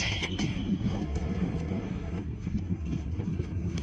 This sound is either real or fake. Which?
fake